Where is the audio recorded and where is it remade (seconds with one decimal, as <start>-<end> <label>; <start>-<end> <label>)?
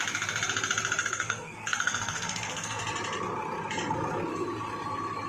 0.0-1.0 recorded; 1.0-2.8 remade; 2.8-5.3 recorded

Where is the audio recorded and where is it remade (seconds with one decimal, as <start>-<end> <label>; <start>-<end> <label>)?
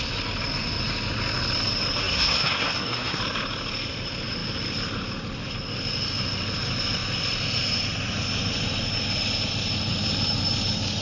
0.0-2.0 recorded; 2.0-3.2 remade; 3.2-11.0 recorded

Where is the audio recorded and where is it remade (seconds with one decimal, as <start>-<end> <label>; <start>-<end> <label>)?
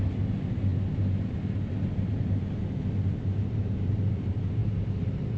0.0-5.4 recorded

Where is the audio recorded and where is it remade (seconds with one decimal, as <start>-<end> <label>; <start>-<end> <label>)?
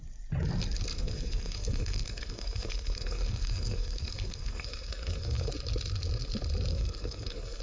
0.0-0.9 recorded; 0.9-5.5 remade; 5.5-6.7 recorded; 6.7-7.6 remade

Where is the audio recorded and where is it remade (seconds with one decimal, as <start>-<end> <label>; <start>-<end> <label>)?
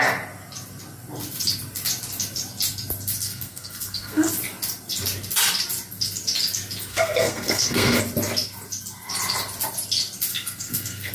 0.0-3.2 recorded; 3.2-4.3 remade; 4.3-6.9 recorded; 6.9-8.0 remade; 8.0-10.3 recorded; 10.3-11.1 remade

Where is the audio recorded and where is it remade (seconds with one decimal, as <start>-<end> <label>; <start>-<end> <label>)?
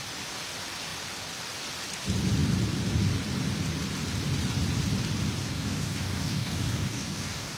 0.0-5.4 recorded; 5.4-7.6 remade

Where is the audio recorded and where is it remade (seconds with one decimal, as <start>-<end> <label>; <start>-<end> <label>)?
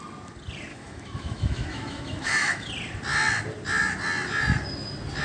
0.0-0.7 recorded; 0.7-2.7 remade; 2.7-5.2 recorded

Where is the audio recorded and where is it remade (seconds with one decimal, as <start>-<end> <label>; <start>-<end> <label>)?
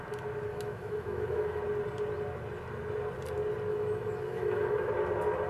0.0-0.5 recorded; 0.5-1.6 remade; 1.6-3.7 recorded; 3.7-4.9 remade; 4.9-5.5 recorded